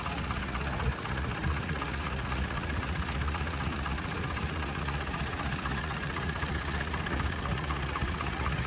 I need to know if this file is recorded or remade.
remade